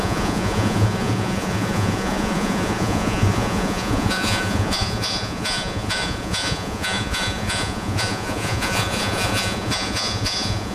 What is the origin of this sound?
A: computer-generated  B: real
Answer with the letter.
A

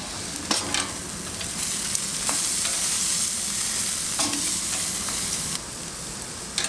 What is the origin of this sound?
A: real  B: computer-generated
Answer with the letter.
A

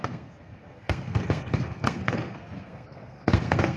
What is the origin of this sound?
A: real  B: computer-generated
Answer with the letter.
B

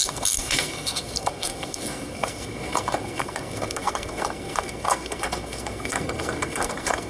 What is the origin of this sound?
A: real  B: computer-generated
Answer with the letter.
B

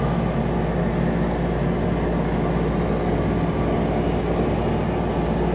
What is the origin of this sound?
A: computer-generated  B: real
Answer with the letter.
B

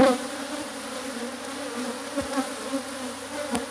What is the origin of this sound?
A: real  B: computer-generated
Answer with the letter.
B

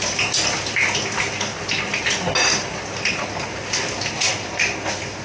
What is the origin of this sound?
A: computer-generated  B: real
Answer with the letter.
B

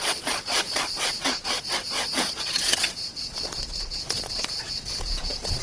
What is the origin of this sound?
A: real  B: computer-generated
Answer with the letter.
B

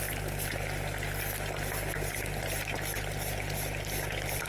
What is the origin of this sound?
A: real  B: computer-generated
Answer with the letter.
A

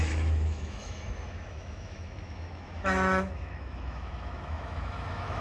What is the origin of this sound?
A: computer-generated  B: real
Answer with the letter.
A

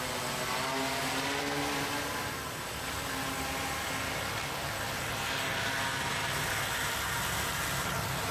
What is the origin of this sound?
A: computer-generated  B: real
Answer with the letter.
B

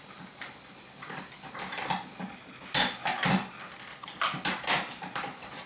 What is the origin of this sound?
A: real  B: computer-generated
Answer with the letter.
A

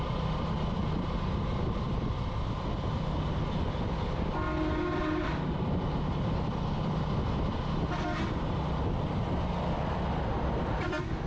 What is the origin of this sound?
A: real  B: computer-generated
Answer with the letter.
A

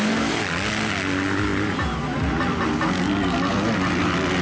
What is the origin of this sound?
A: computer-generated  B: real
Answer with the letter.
B